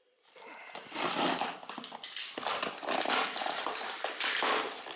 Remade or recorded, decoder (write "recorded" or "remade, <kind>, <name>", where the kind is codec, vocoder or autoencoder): remade, vocoder, BigVGAN v2